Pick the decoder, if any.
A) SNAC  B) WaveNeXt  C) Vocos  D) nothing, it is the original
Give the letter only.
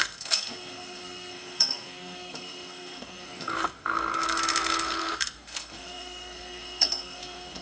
A